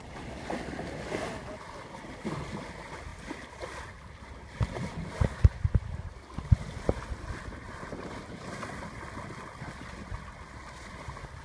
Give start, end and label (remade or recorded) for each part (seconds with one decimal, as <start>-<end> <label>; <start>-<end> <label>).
0.0-11.4 recorded